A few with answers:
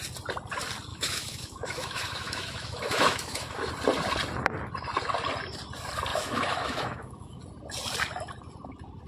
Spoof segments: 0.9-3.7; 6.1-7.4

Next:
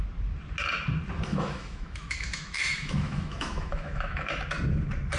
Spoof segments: 1.3-4.4

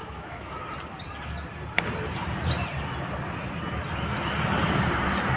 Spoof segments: 0.0-0.6

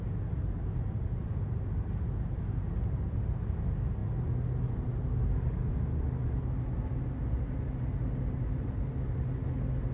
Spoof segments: none